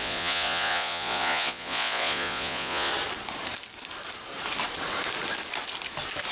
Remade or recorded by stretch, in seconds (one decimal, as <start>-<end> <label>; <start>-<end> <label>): 0.0-2.9 remade; 2.9-6.3 recorded